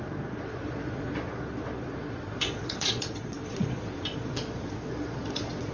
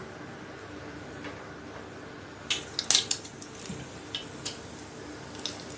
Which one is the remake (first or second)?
first